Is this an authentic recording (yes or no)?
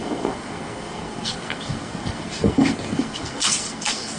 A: no